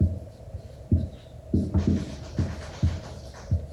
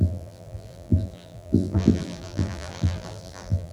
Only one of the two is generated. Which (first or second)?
second